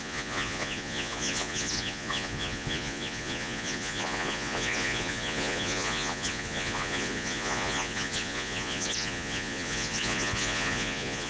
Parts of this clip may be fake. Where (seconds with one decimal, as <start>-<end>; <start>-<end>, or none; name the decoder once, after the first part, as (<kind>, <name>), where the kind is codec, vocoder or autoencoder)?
0.0-11.3 (vocoder, Vocos)

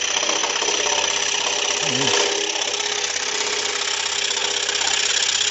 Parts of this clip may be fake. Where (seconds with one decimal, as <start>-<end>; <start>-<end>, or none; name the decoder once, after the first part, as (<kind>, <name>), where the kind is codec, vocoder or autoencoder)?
0.4-3.7 (vocoder, BigVGAN v2)

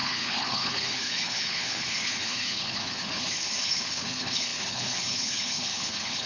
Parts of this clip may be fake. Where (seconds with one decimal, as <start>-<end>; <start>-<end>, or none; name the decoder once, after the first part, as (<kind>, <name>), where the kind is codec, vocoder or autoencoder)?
0.0-6.3 (codec, HILCodec)

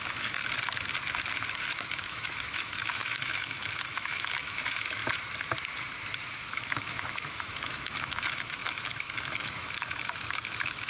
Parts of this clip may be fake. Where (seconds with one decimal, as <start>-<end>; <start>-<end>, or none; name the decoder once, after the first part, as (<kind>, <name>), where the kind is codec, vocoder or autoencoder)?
0.0-0.4 (autoencoder, DAC-VAE); 1.7-5.0; 6.4-10.9

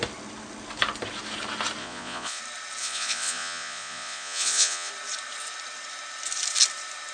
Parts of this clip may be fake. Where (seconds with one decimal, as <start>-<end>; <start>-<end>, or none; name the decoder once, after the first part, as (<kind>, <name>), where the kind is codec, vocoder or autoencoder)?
1.8-2.4 (vocoder, Vocos); 2.8-4.9

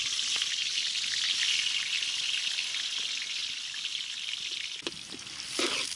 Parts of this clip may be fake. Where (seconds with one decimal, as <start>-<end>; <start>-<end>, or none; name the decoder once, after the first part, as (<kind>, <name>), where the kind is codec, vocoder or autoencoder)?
none

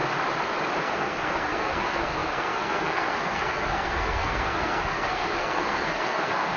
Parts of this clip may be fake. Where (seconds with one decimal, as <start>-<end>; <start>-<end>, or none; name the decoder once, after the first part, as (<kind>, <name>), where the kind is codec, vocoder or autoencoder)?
0.8-6.6 (codec, SNAC)

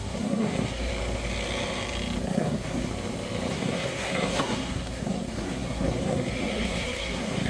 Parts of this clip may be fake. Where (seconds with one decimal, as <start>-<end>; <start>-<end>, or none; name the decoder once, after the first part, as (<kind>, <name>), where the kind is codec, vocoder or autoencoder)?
0.0-0.9 (codec, SNAC); 2.2-2.9; 3.5-7.5